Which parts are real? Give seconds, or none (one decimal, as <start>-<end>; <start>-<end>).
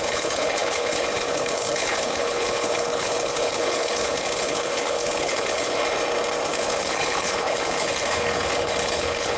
5.8-6.5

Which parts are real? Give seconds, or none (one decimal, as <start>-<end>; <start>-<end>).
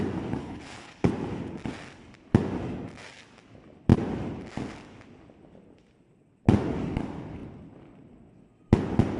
0.0-0.4; 1.1-9.2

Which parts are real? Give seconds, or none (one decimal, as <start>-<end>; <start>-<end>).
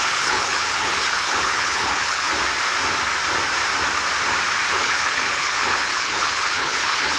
2.3-4.7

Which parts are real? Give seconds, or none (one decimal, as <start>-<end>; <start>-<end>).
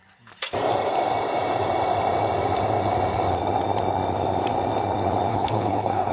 0.0-5.3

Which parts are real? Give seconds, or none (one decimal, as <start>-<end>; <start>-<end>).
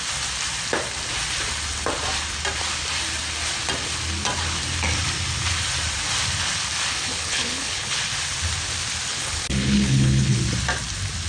0.0-7.1; 8.0-9.1; 10.4-11.3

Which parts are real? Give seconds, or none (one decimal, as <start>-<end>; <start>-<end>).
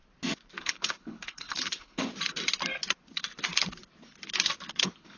0.0-0.6; 2.1-4.8